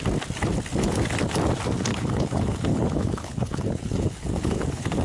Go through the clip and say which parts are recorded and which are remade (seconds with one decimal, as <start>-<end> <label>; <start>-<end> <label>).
0.0-1.9 recorded; 1.9-5.0 remade